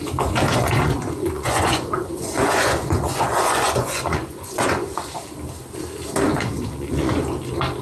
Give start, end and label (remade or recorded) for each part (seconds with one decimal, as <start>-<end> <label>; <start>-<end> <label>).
0.0-0.5 recorded; 0.5-5.2 remade; 5.2-6.3 recorded; 6.3-7.2 remade; 7.2-7.8 recorded